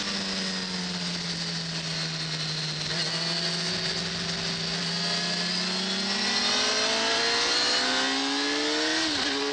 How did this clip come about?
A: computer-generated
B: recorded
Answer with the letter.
B